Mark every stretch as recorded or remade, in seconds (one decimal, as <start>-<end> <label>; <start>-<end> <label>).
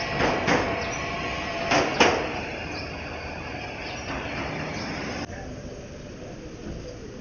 0.0-7.2 recorded